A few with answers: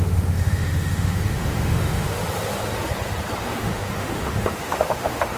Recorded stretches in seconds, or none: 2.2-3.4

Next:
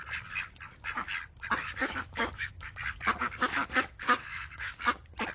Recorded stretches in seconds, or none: 0.0-1.6; 2.7-3.5; 4.7-5.3

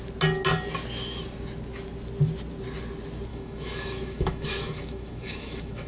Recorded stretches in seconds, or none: 0.0-3.3

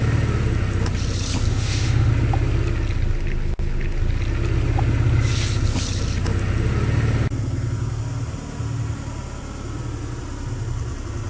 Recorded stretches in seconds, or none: 0.0-1.5; 2.1-11.3

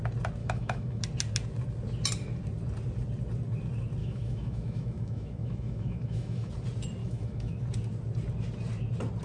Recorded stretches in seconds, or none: 0.0-0.4; 1.0-4.0; 6.5-7.0; 7.6-9.2

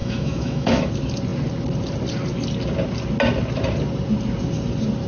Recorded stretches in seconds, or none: 0.9-5.1